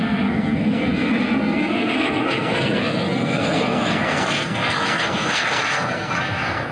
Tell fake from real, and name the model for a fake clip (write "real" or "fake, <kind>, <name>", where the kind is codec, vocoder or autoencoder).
fake, codec, SNAC